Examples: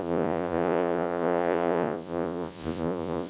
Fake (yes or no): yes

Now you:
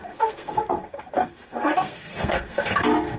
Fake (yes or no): yes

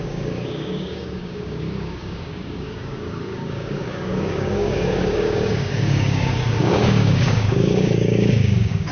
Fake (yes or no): yes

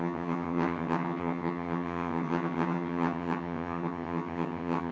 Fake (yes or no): yes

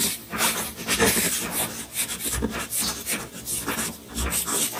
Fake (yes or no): no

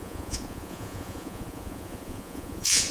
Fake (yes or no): yes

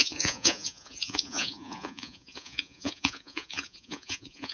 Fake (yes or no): yes